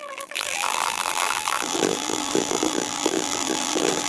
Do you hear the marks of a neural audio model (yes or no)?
yes